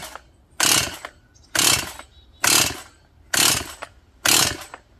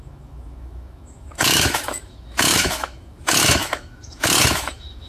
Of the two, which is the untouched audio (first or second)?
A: first